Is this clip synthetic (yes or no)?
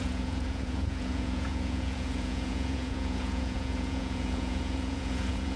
yes